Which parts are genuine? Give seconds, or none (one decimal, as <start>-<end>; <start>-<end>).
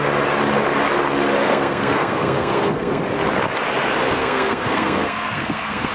0.0-1.4; 3.0-4.2